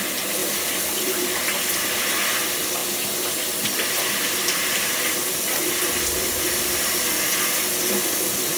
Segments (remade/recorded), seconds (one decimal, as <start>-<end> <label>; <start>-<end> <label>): 0.0-8.6 recorded